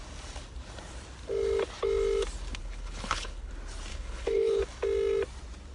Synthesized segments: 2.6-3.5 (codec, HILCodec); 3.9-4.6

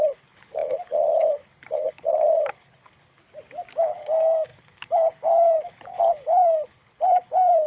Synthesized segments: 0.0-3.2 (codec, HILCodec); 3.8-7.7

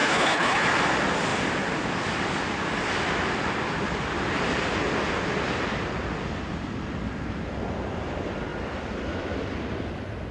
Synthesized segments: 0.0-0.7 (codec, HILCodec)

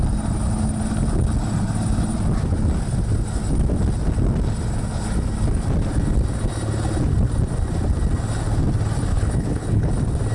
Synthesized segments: 9.1-9.9 (codec, HILCodec)

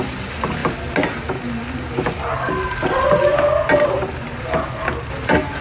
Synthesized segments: none

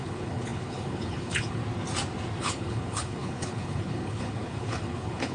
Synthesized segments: 0.0-1.6 (codec, HILCodec); 2.4-5.3

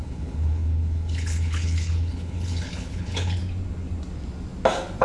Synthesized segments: 0.0-3.4 (codec, HILCodec)